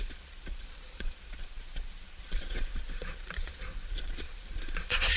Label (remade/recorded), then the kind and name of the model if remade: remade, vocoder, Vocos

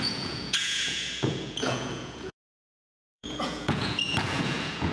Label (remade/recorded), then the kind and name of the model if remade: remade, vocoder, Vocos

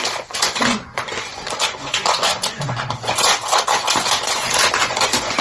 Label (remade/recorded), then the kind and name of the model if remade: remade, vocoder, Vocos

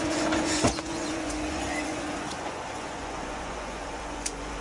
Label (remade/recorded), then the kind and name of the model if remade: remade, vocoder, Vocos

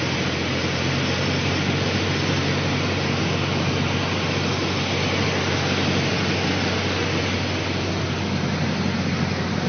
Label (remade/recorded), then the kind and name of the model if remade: recorded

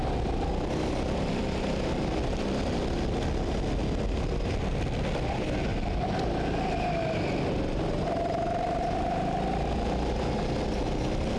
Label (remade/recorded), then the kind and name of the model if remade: recorded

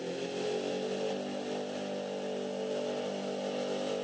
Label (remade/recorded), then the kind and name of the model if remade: recorded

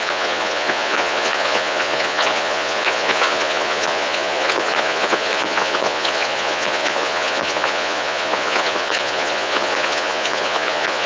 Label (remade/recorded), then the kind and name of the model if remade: remade, vocoder, Vocos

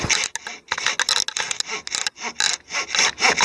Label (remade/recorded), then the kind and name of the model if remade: recorded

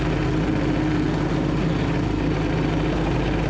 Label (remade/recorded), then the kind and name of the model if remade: recorded